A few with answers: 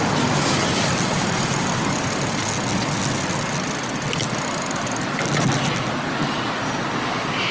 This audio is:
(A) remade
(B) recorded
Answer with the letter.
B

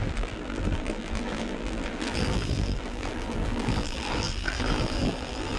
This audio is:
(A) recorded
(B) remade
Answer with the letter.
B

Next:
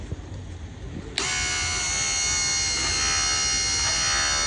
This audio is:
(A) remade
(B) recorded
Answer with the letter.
B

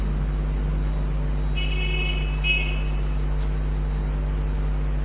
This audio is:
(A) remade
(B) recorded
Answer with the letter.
B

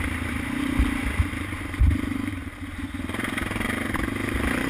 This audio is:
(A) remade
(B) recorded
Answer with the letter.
A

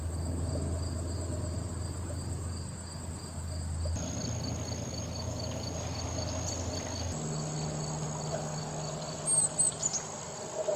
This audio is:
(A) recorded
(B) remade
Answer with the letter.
A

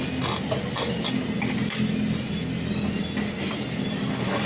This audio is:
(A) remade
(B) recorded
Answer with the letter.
B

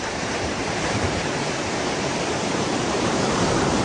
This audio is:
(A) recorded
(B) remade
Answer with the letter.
B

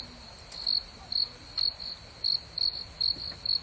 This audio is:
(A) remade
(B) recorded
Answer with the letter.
B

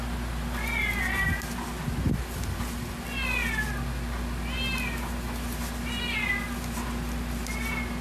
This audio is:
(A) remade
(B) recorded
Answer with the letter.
B